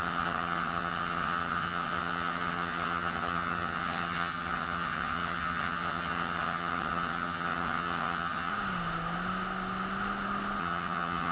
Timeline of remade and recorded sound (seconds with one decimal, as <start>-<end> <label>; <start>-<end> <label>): 0.0-8.5 remade; 8.5-10.6 recorded; 10.6-11.3 remade